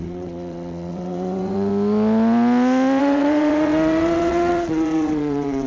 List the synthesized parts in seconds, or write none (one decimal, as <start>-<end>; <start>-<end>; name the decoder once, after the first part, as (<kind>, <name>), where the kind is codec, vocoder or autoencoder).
0.0-1.7 (vocoder, WaveNeXt); 3.0-5.7